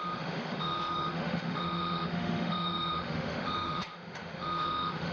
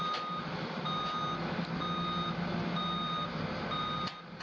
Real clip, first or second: second